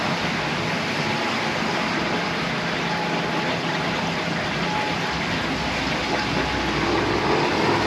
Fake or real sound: real